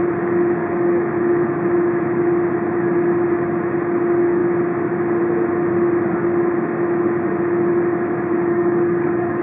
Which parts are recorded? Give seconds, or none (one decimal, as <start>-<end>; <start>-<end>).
0.0-0.6; 1.1-8.5